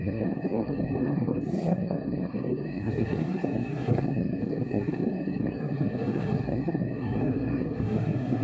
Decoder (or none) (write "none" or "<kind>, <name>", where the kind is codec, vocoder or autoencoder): codec, SNAC